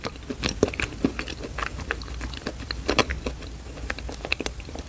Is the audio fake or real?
real